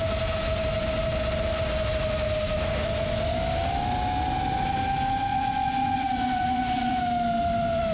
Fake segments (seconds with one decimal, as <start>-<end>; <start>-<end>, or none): 5.3-7.0